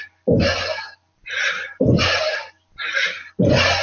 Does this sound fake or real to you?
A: real